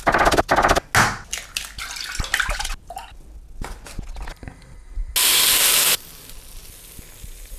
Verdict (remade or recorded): recorded